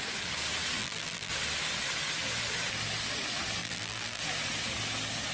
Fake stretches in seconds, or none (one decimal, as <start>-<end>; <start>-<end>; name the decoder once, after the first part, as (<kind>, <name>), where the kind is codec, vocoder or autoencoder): 0.8-1.3 (vocoder, BigVGAN v2); 3.6-4.2